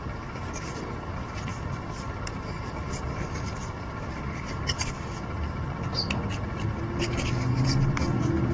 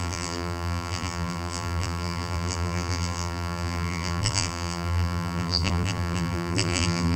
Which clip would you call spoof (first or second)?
second